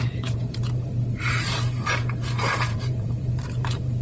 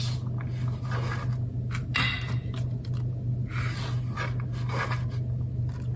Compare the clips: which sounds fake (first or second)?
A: first